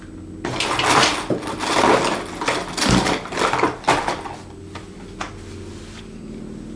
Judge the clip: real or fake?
real